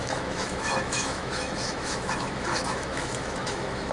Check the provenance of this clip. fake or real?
fake